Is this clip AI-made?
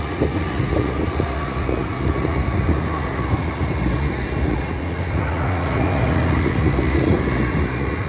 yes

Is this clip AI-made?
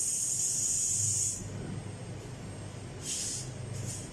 no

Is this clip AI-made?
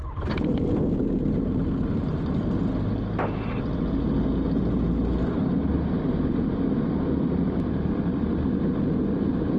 no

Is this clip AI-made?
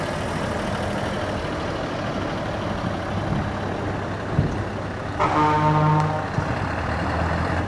no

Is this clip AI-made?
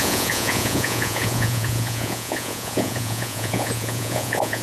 yes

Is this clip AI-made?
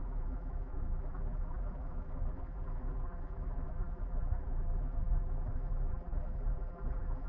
yes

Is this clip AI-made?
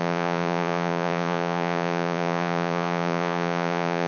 yes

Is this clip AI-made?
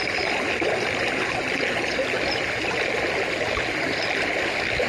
no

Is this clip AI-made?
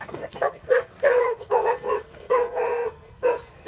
yes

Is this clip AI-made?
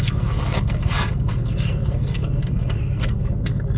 yes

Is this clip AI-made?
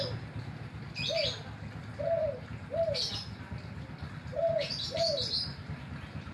no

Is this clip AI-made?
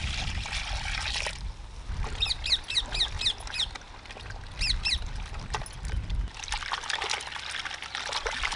no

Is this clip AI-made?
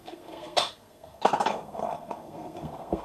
yes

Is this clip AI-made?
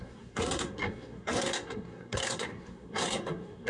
yes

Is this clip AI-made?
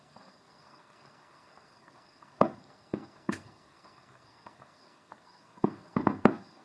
yes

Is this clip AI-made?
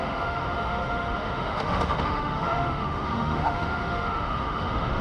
yes